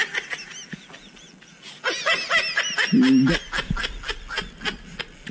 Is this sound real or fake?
real